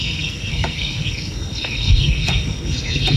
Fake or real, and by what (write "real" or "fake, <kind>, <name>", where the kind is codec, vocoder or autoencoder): fake, codec, SNAC